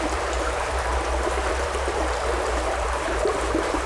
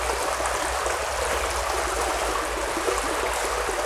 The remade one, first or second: first